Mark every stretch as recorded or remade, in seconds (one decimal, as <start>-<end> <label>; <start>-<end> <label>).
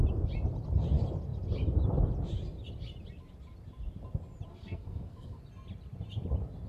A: 0.0-4.5 recorded; 4.5-5.4 remade; 5.4-6.7 recorded